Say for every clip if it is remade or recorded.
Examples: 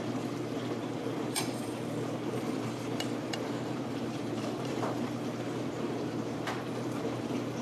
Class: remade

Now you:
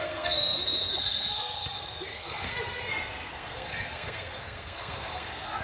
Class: remade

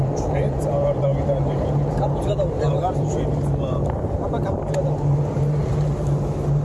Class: remade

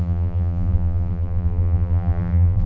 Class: remade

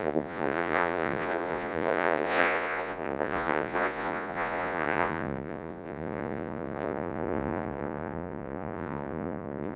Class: remade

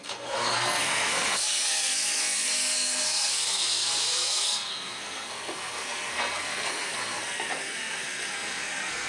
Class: remade